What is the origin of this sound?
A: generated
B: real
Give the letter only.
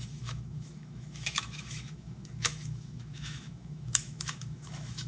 A